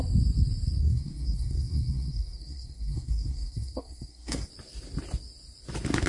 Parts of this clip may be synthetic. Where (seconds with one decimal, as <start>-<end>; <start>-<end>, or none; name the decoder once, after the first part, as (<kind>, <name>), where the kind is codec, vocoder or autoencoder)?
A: 0.8-4.5 (codec, SNAC)